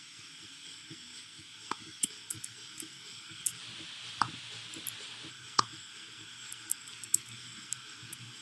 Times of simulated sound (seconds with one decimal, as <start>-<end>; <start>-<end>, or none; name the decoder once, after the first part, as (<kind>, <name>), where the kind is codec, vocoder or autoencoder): 0.0-3.6 (codec, SNAC); 5.3-8.4